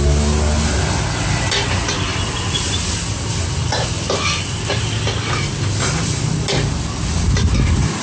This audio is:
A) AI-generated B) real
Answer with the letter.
B